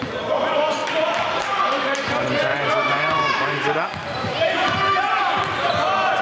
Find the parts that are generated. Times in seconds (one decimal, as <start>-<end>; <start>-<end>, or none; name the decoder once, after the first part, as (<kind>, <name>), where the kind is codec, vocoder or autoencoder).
2.5-5.6 (vocoder, BigVGAN v2)